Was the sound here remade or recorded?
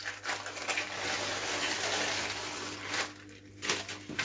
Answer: recorded